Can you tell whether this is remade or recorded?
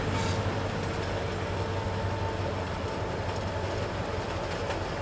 recorded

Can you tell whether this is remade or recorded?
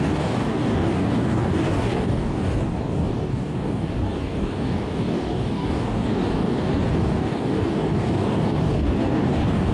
remade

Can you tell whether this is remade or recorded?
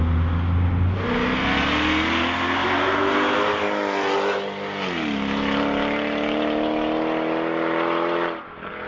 recorded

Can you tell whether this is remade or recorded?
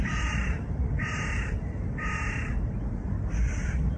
recorded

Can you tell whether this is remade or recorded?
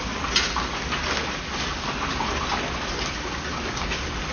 recorded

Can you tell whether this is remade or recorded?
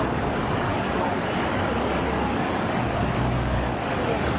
remade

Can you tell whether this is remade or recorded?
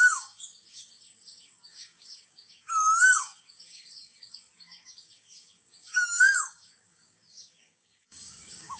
remade